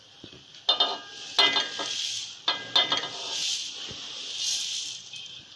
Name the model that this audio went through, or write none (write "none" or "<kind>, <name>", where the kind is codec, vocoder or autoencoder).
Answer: none